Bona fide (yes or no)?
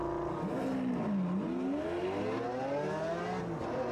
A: yes